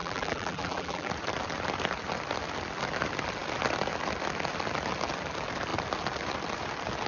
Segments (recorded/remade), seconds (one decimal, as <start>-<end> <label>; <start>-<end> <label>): 0.0-1.1 remade; 1.1-7.1 recorded